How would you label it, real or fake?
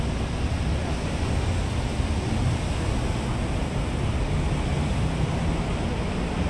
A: real